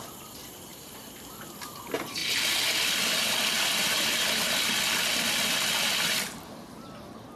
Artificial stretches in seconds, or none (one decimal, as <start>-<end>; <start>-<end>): 0.7-1.5

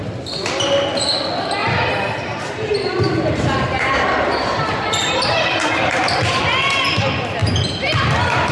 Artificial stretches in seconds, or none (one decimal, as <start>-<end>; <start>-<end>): 1.6-6.4; 7.4-8.5

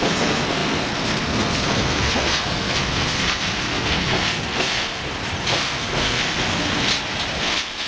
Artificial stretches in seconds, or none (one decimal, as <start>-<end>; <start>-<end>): 0.0-5.0; 5.5-6.9; 7.4-7.9

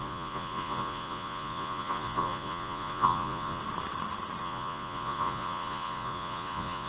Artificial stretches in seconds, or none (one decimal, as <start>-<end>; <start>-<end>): 0.0-3.6; 4.4-6.9

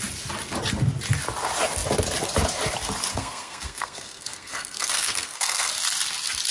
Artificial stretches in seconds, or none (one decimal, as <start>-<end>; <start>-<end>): 3.1-5.7

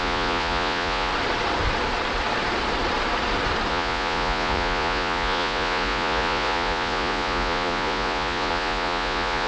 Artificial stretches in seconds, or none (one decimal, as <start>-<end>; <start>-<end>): 0.0-1.1; 3.7-9.5

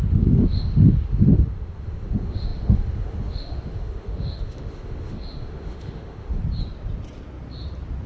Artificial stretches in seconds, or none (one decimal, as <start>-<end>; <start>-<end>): 0.0-6.4